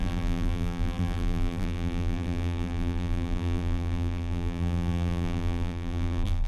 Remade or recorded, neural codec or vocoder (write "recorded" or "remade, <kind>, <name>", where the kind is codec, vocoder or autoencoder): remade, vocoder, BigVGAN v2